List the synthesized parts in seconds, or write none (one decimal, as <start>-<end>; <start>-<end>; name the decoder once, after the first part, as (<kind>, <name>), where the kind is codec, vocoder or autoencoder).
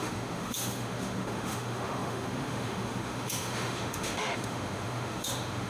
0.0-5.7 (autoencoder, DAC-VAE)